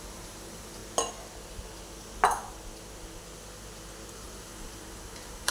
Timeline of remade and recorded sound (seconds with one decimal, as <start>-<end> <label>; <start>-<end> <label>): 0.0-0.8 remade; 0.8-4.1 recorded; 4.1-5.5 remade